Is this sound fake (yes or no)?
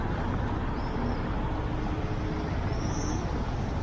no